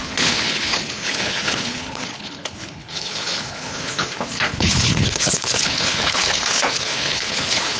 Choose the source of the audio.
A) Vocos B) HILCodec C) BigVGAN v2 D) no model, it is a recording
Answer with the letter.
B